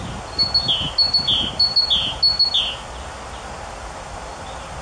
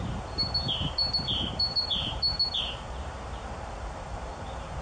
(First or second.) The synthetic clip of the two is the second